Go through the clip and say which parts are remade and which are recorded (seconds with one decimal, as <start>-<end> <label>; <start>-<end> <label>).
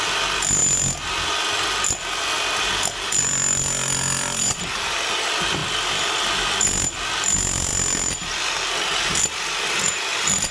0.0-10.5 recorded